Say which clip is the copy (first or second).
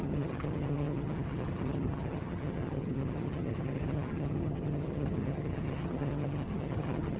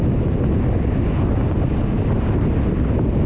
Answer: first